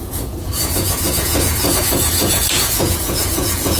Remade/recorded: remade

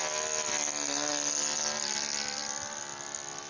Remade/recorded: recorded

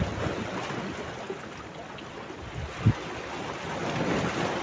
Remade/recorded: recorded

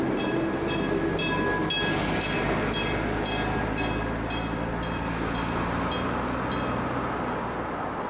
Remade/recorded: recorded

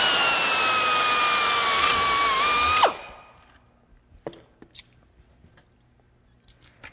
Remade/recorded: recorded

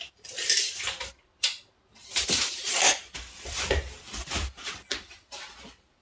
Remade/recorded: recorded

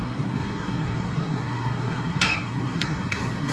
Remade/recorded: remade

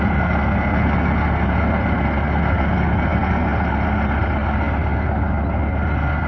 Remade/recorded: recorded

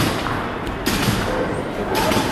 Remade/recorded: recorded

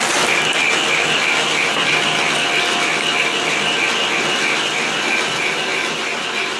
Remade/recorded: recorded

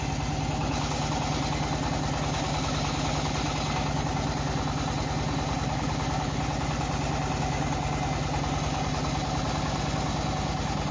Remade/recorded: recorded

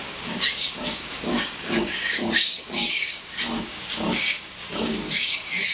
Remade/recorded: remade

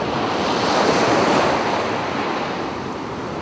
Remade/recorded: recorded